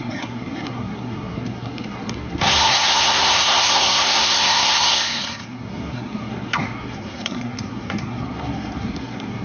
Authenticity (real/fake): fake